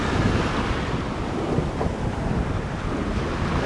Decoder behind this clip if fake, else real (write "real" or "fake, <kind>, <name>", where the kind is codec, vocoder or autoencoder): real